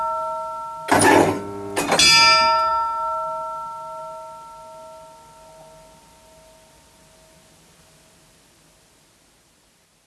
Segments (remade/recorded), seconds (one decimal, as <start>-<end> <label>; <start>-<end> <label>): 0.0-10.1 recorded